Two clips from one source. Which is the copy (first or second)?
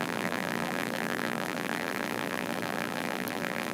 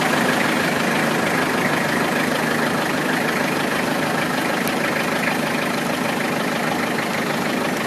first